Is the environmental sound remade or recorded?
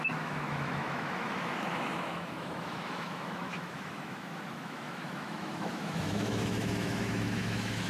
remade